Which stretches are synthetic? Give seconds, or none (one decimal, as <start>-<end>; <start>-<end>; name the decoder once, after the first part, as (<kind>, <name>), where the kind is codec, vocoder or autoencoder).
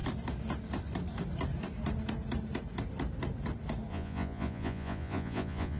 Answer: 3.9-5.8 (vocoder, Vocos)